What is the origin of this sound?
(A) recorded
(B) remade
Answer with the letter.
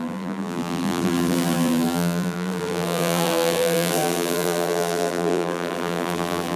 B